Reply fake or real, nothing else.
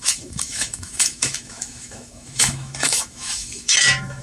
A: fake